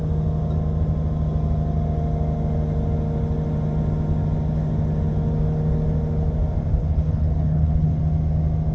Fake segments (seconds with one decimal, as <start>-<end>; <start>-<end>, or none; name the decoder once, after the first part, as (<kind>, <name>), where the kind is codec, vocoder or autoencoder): 6.8-8.0 (codec, HILCodec)